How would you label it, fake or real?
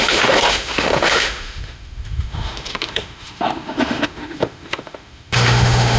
fake